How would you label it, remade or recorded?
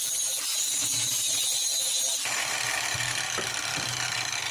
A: recorded